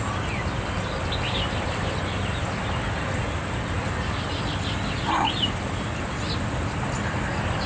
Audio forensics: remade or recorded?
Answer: recorded